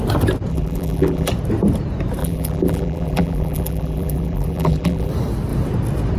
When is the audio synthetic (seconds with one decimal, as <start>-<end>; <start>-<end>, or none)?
0.5-1.3; 2.2-5.1